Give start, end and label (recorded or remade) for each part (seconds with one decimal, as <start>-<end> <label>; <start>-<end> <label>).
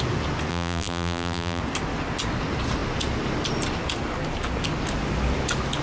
0.0-0.5 recorded; 0.5-1.6 remade; 1.6-5.8 recorded